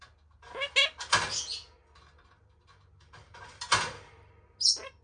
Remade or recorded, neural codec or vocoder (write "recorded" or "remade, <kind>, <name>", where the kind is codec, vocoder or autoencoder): recorded